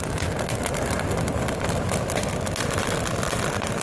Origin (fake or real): real